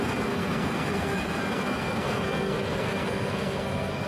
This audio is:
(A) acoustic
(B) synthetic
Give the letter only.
B